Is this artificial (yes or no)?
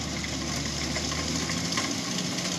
no